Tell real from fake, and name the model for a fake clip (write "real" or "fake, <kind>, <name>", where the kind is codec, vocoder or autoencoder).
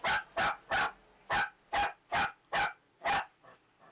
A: real